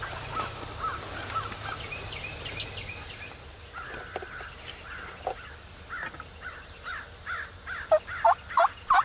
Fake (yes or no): no